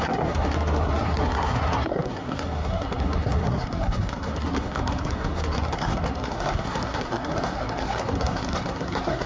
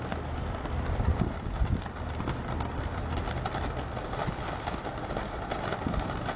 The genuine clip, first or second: second